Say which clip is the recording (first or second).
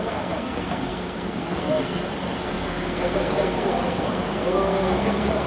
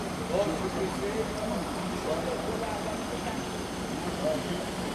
second